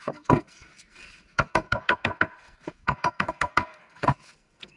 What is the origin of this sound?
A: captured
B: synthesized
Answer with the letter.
B